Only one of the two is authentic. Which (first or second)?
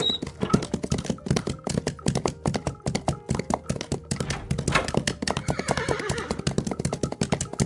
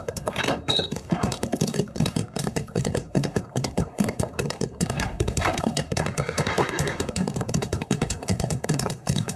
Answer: first